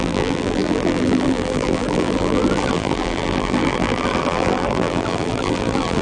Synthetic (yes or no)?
yes